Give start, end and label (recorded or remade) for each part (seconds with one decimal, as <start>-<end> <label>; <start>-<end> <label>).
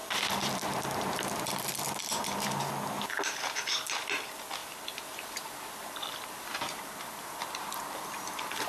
0.0-2.7 remade; 2.7-4.6 recorded; 4.6-8.7 remade